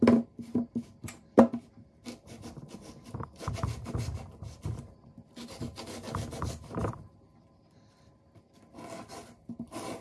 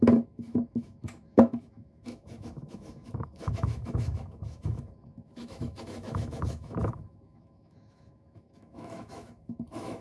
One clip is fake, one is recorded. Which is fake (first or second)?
second